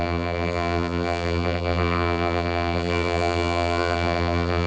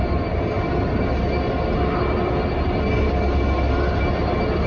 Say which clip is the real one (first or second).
second